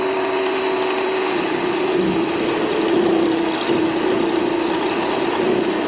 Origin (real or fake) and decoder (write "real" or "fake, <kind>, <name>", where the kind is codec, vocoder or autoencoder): real